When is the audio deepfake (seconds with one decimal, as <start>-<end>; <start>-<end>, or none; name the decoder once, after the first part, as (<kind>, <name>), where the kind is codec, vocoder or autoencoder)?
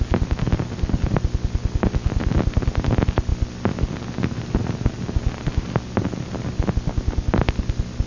none